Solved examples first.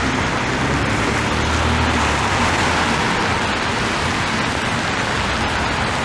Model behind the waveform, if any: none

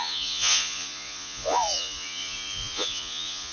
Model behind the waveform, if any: vocoder, Vocos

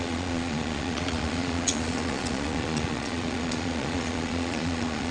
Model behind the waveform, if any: vocoder, Vocos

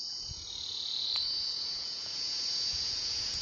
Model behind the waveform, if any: vocoder, Vocos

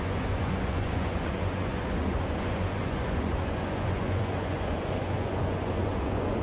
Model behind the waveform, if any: vocoder, Vocos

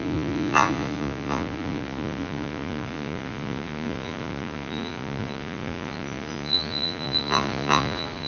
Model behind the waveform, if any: vocoder, Vocos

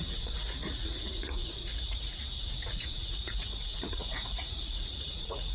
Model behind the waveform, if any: vocoder, Vocos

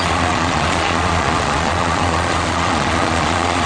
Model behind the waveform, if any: vocoder, Vocos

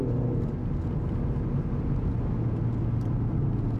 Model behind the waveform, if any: none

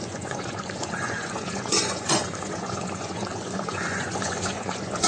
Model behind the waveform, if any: vocoder, Vocos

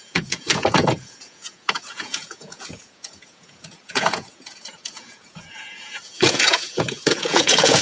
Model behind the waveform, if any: vocoder, Vocos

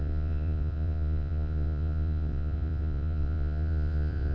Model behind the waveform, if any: vocoder, Vocos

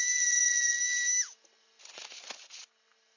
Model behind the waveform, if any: none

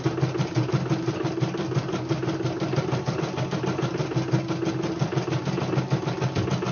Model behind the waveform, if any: none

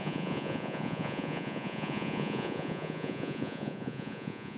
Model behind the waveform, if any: vocoder, Vocos